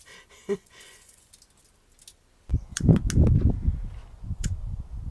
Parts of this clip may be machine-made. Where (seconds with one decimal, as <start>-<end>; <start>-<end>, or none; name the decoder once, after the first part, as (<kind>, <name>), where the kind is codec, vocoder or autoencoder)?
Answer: 0.4-1.3 (vocoder, Vocos); 2.5-3.0; 4.0-4.6